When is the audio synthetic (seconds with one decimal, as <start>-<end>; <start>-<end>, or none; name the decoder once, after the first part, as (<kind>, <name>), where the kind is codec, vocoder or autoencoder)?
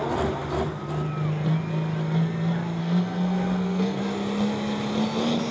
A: 2.8-4.0 (codec, SNAC)